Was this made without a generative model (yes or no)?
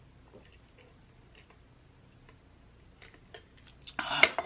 yes